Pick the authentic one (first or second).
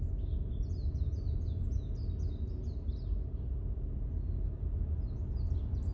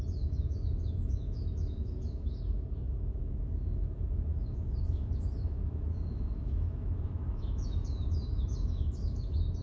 first